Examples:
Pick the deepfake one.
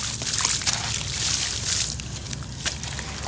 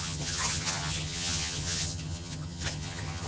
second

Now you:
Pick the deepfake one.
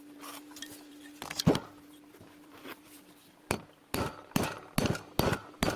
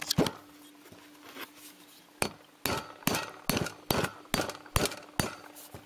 first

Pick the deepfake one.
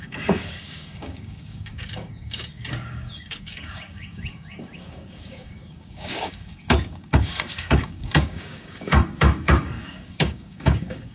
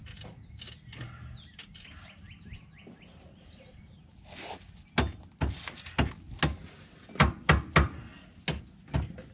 first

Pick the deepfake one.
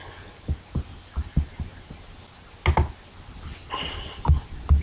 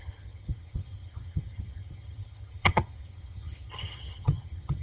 second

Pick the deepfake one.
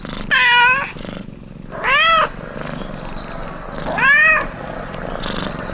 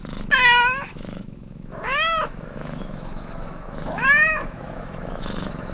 second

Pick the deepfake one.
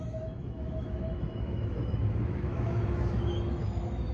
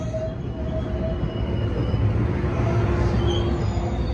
first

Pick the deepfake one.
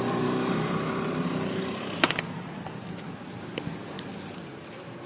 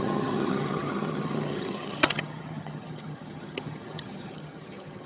second